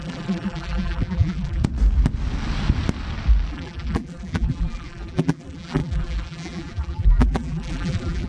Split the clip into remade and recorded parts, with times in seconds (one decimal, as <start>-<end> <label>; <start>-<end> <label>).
0.0-1.6 remade; 1.6-3.5 recorded; 3.5-8.3 remade